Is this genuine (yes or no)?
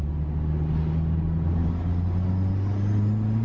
yes